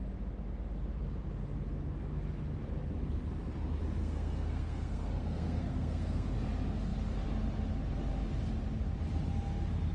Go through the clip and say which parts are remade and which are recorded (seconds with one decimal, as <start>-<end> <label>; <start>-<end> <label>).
0.0-4.0 recorded; 4.0-6.3 remade; 6.3-9.9 recorded